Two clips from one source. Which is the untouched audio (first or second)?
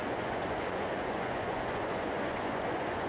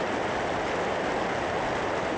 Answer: second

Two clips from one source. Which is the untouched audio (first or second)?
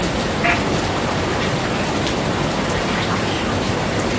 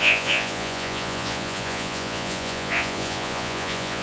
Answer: first